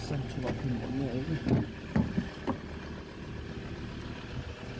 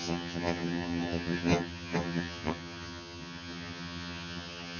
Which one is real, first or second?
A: first